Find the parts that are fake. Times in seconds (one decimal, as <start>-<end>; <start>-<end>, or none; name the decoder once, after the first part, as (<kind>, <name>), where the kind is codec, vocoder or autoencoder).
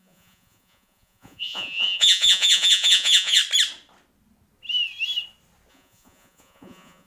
0.0-3.4 (vocoder, Vocos); 5.7-7.1